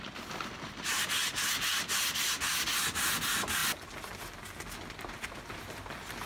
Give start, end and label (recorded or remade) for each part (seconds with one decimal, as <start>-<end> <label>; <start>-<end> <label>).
0.0-6.3 recorded